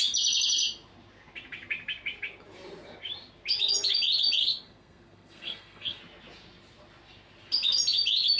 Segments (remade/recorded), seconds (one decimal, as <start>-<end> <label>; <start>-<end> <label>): 0.0-4.4 recorded; 4.4-6.0 remade; 6.0-8.4 recorded